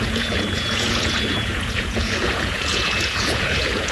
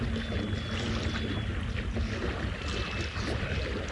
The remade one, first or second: first